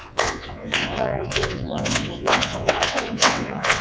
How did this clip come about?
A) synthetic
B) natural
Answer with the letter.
A